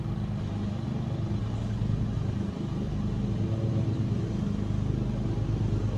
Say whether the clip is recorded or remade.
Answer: recorded